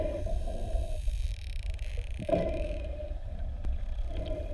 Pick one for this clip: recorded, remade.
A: remade